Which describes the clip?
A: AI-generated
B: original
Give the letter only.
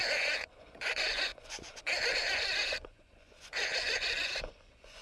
A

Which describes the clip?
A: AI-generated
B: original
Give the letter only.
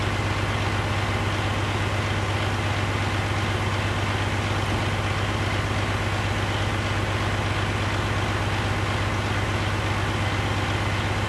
B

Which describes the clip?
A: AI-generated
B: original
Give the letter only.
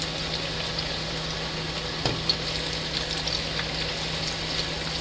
B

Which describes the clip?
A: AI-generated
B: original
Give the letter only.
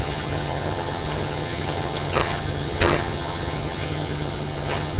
A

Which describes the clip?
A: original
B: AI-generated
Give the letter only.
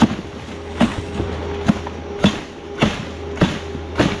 A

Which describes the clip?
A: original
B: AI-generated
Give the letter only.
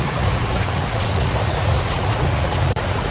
B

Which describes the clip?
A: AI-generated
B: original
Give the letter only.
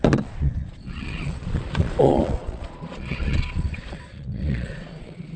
A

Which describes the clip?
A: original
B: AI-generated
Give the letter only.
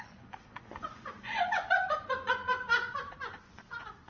B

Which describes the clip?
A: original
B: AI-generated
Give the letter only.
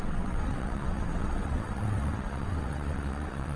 B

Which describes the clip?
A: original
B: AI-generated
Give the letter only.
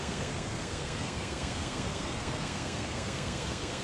B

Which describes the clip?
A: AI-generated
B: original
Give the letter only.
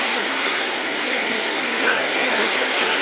A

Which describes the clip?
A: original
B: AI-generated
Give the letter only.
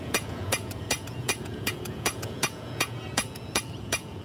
B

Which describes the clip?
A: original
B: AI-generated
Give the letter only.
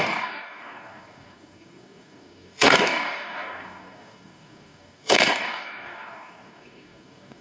B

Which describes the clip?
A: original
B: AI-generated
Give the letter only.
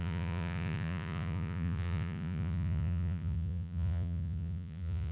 B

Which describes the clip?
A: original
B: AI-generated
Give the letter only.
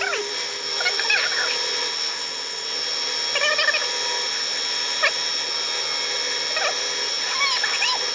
A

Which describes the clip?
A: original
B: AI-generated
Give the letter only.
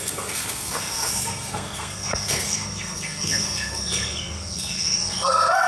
B